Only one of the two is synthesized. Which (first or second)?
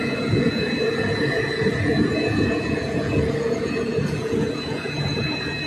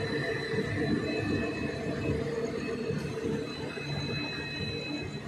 first